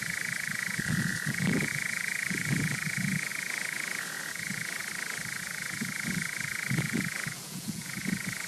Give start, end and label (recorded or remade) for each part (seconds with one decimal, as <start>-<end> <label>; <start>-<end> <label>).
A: 0.0-4.8 remade; 4.8-5.4 recorded; 5.4-8.5 remade